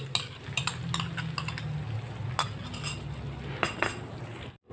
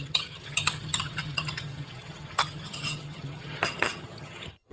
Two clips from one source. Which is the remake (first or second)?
second